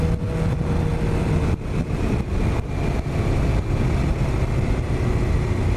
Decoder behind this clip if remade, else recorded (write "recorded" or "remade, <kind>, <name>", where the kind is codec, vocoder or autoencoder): recorded